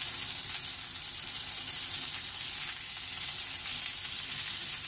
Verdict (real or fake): real